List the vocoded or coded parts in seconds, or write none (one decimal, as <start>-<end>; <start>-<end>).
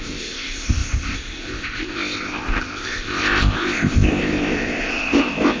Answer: 0.0-5.6